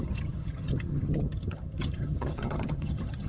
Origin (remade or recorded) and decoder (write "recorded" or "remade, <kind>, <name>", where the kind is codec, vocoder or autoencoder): remade, vocoder, HiFi-GAN